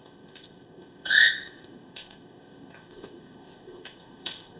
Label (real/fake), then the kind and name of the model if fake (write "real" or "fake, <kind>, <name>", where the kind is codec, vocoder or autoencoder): fake, codec, ZipCodec